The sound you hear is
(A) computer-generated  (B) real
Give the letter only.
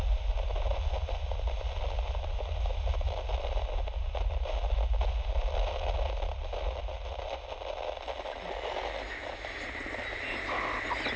B